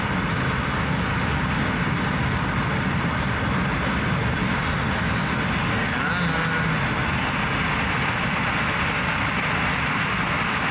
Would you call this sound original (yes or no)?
yes